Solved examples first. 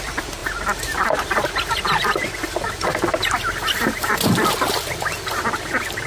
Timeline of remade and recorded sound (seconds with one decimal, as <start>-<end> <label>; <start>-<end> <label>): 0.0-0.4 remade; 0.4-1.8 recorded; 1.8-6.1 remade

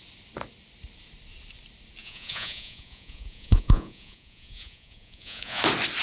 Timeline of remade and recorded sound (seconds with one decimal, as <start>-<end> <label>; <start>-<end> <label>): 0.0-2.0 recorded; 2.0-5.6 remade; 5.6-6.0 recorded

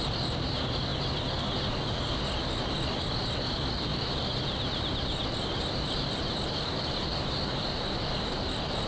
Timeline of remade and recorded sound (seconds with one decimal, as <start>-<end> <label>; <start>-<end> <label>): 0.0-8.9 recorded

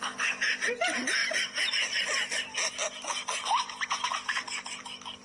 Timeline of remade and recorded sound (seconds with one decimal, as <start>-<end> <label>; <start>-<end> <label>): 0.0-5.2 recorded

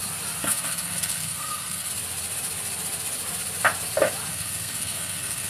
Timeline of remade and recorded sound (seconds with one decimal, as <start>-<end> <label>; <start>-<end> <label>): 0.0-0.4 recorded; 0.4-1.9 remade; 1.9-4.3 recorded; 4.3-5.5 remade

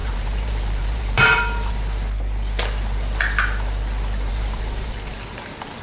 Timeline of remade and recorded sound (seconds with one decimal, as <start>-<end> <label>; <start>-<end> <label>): 0.0-1.7 remade; 1.7-4.3 recorded; 4.3-4.9 remade; 4.9-5.8 recorded